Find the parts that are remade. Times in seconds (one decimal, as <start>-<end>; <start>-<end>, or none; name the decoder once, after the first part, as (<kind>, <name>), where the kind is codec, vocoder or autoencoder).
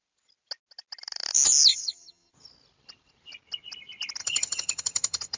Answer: 1.7-2.3 (vocoder, HiFi-GAN); 4.2-5.4